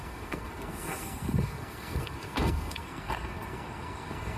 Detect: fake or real fake